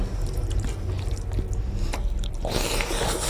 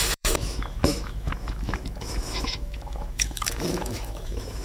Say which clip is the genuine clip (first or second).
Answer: first